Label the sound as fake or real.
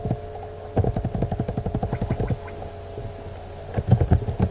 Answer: real